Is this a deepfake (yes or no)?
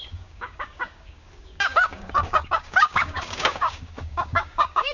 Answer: yes